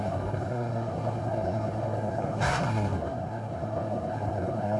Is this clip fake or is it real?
fake